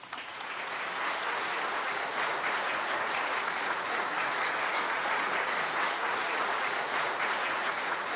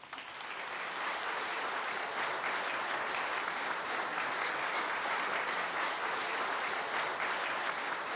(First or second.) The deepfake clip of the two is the first